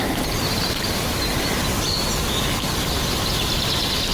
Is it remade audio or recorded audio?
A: recorded